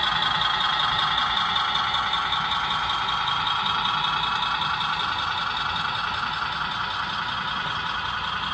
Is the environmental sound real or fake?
real